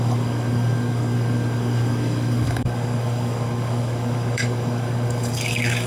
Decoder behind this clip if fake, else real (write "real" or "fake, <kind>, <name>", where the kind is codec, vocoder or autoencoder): fake, codec, DAC